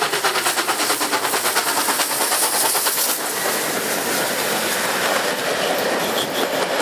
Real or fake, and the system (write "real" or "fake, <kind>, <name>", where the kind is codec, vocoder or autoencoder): real